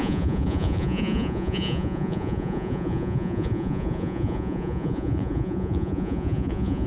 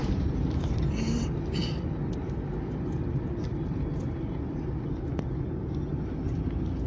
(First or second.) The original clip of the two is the second